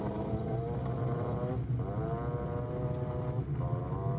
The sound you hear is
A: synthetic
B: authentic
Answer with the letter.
B